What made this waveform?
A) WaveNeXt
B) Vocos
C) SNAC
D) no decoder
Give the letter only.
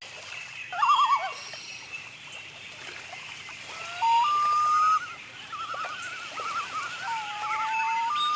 D